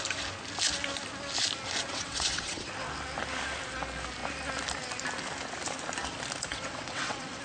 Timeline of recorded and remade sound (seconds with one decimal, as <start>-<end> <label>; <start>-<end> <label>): 0.0-1.9 recorded; 1.9-2.7 remade; 2.7-6.5 recorded; 6.5-7.4 remade